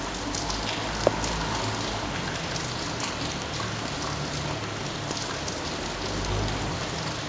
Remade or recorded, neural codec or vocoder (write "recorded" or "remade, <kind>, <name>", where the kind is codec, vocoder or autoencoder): recorded